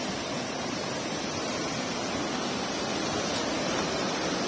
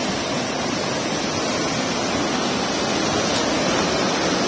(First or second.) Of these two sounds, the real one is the second